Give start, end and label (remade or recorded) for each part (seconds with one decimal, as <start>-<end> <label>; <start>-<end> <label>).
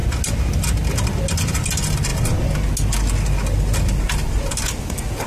0.0-5.3 recorded